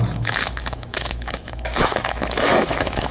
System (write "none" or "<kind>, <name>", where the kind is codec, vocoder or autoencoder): autoencoder, DAC-VAE